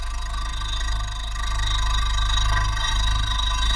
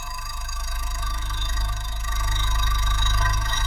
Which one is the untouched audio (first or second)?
first